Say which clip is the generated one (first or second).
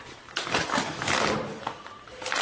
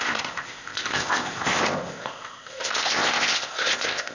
second